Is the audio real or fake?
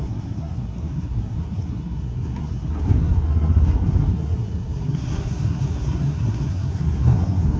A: fake